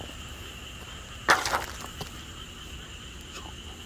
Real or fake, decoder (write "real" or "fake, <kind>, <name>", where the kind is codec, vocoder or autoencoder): real